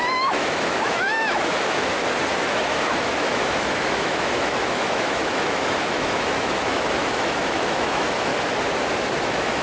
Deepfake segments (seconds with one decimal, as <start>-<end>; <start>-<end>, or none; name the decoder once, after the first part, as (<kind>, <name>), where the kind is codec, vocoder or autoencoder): 0.0-1.9 (autoencoder, DAC-VAE); 2.4-8.3; 9.2-9.6